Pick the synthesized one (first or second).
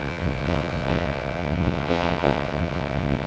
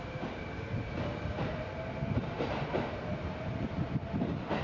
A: first